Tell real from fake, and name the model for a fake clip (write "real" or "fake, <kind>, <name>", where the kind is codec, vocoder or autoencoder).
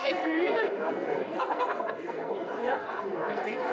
fake, codec, SNAC